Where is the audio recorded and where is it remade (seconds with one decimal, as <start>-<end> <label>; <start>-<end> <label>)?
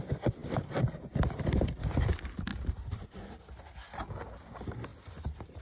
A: 0.0-0.4 recorded; 0.4-1.8 remade; 1.8-2.5 recorded; 2.5-3.3 remade; 3.3-5.6 recorded